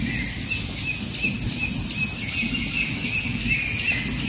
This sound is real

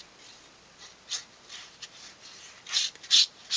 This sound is real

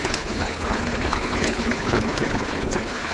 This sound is fake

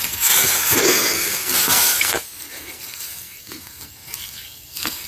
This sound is fake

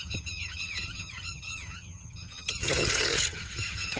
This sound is fake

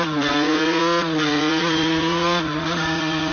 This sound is fake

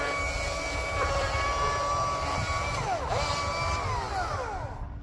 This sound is real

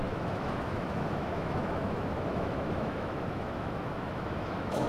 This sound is fake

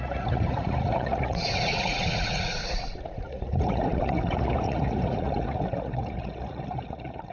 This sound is fake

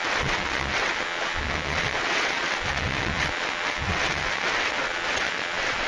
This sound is fake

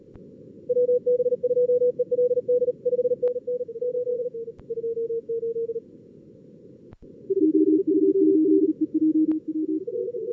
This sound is real